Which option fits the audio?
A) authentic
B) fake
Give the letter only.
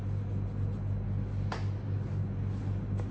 A